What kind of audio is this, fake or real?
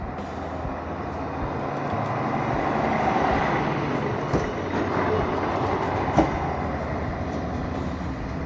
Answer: real